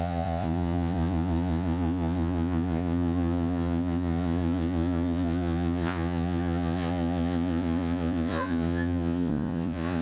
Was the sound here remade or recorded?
remade